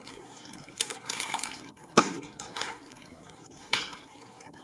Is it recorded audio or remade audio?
remade